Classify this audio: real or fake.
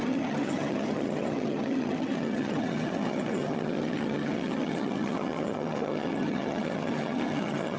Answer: fake